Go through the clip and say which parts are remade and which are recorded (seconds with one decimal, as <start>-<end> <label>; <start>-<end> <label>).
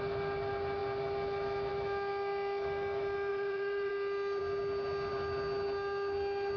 0.0-3.3 recorded; 3.3-3.9 remade; 3.9-6.6 recorded